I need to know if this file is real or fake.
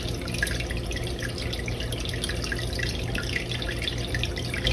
real